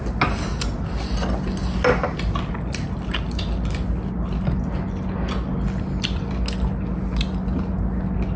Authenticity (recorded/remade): recorded